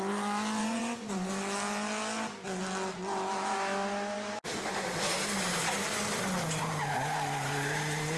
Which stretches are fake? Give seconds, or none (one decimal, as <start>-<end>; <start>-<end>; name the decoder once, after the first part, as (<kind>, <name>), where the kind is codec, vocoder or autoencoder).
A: 0.6-1.3 (vocoder, Vocos)